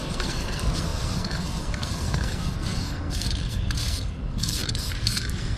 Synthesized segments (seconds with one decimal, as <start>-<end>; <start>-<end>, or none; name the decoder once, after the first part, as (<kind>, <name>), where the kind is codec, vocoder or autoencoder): 0.0-5.6 (codec, SNAC)